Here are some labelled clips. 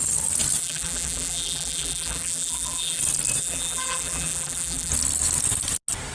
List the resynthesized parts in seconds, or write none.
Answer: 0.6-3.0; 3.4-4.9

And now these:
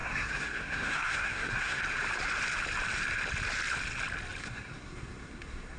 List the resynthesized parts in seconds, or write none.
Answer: 0.0-1.8; 4.4-5.8

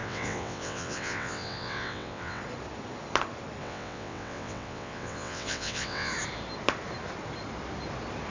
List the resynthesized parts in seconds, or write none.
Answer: 0.0-2.4; 3.6-6.1

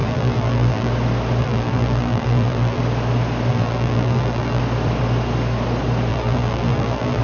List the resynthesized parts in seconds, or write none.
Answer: 0.0-0.9; 1.4-2.8; 3.5-4.6; 6.1-7.2

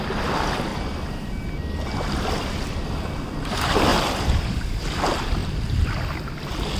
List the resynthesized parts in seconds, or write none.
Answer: 0.7-1.5; 3.9-4.6

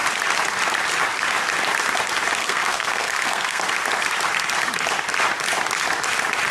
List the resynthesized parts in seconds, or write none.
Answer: 2.4-3.6